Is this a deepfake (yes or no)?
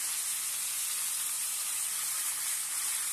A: no